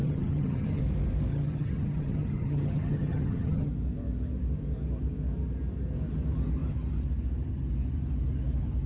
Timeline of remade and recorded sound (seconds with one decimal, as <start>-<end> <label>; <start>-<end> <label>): 0.0-0.8 remade; 0.8-1.3 recorded; 1.3-3.7 remade; 3.7-8.9 recorded